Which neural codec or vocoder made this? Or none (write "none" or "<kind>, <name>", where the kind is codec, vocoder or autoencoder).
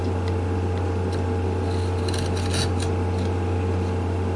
none